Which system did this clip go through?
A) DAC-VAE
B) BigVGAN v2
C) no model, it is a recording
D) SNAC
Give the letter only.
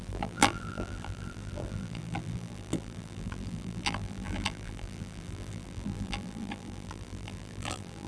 B